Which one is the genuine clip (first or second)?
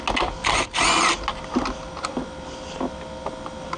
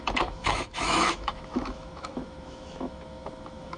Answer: first